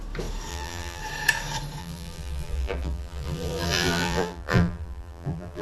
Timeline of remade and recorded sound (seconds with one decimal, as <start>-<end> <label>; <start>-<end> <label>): 0.0-0.5 recorded; 0.5-1.0 remade; 1.0-1.8 recorded; 1.8-5.6 remade